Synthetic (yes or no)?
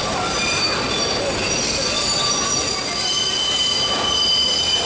no